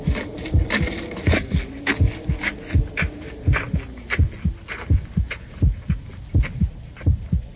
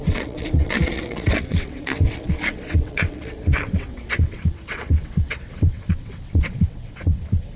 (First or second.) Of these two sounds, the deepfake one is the second